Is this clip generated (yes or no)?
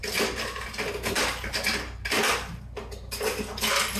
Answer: no